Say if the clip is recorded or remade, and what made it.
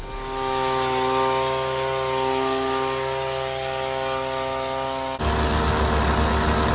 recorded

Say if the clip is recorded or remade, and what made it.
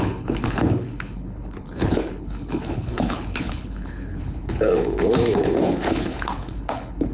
remade, codec, HILCodec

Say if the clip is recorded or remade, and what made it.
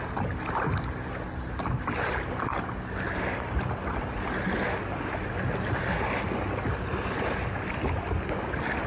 recorded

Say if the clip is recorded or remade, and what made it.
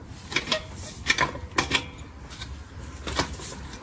recorded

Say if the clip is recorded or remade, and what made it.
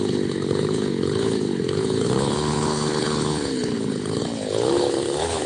remade, codec, HILCodec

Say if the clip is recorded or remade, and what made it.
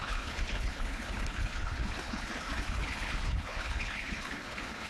remade, codec, HILCodec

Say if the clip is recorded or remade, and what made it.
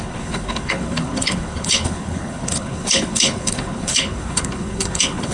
remade, codec, HILCodec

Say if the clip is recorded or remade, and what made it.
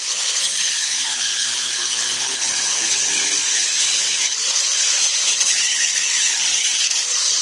remade, codec, HILCodec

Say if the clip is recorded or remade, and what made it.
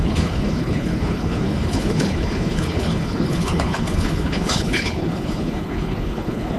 remade, codec, HILCodec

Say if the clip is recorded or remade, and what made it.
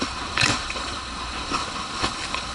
remade, codec, HILCodec